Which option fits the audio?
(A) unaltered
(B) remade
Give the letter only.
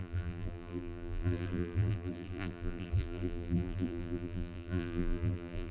B